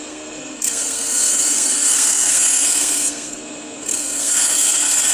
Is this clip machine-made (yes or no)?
yes